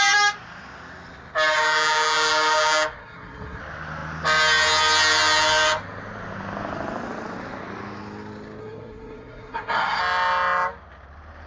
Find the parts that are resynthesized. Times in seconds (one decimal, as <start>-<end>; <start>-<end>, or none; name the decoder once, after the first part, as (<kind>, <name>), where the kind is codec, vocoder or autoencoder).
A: 3.0-3.6 (codec, SNAC); 8.6-10.0

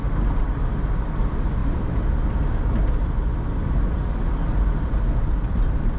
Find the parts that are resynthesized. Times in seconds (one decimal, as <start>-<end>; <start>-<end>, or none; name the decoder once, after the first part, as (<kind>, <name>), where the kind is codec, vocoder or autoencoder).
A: 1.6-2.2 (vocoder, BigVGAN v2)

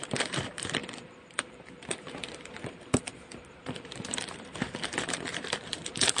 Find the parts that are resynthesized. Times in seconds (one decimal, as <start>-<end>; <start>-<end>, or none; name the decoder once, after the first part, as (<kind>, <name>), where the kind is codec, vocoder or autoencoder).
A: 0.0-6.2 (vocoder, BigVGAN v2)

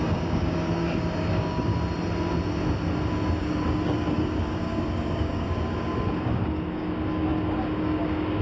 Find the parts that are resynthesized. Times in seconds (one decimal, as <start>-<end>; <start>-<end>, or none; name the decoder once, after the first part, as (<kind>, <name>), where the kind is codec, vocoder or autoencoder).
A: 0.0-1.7 (codec, DAC); 3.4-8.4